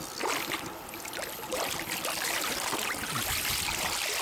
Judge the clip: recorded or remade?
recorded